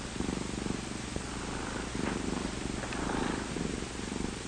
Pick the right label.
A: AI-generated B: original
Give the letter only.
A